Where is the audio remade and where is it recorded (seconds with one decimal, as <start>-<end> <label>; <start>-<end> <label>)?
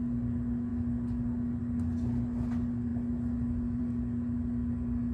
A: 0.0-5.1 recorded